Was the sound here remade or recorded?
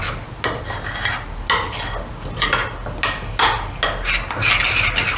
recorded